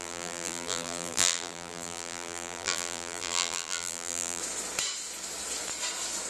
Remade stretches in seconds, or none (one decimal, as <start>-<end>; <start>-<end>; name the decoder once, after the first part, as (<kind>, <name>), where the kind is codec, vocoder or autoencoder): 0.0-4.4 (vocoder, BigVGAN v2)